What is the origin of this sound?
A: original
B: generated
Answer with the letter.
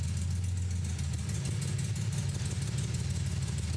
A